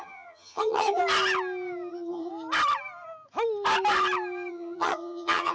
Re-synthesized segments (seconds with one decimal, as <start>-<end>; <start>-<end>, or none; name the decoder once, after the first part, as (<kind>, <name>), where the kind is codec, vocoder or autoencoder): 0.0-1.0 (vocoder, HiFi-GAN); 1.9-2.3; 4.5-5.5